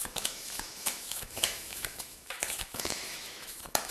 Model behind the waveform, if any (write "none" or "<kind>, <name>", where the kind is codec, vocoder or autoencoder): autoencoder, DAC-VAE